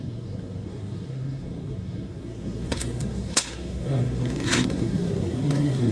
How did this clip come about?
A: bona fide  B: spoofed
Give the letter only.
B